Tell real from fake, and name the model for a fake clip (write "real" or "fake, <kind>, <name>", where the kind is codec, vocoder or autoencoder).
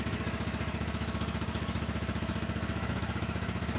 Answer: fake, autoencoder, DAC-VAE